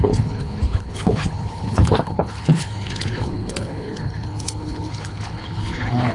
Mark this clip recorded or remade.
remade